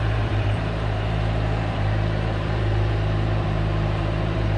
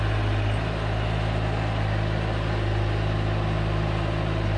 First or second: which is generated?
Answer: first